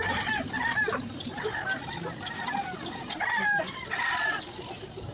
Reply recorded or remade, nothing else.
recorded